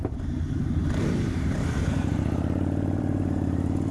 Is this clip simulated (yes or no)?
yes